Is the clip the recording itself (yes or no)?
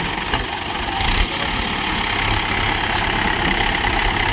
yes